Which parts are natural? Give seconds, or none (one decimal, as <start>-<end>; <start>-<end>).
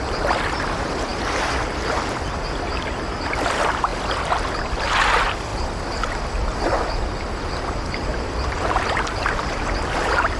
0.0-10.4